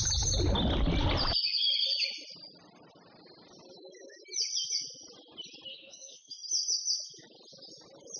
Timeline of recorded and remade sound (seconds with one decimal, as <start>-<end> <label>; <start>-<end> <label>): 0.0-5.7 recorded; 5.7-6.3 remade; 6.3-8.2 recorded